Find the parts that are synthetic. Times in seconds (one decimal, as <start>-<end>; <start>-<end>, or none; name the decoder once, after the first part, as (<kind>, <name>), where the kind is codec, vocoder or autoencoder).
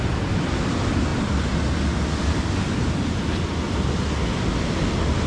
none